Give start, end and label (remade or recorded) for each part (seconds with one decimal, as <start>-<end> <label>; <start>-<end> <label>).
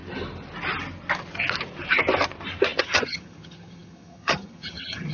0.0-2.8 recorded; 2.8-5.1 remade